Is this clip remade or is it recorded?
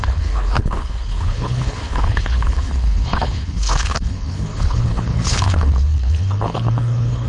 remade